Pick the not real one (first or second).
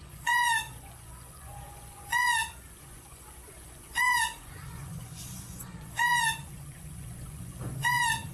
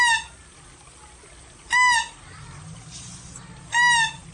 first